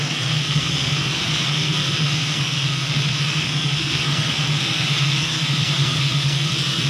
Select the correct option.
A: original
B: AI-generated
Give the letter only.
B